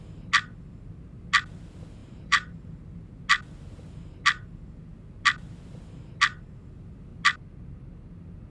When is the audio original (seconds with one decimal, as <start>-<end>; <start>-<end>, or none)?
0.0-2.0; 2.8-8.5